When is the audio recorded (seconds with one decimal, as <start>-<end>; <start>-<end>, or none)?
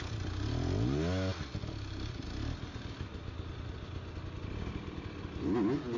0.0-6.0